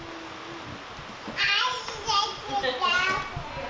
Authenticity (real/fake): real